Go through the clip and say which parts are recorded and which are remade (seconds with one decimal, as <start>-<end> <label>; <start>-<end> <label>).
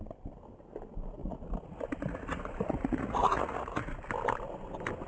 0.0-1.2 recorded; 1.2-3.9 remade; 3.9-5.1 recorded